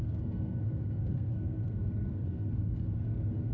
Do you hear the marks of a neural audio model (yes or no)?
yes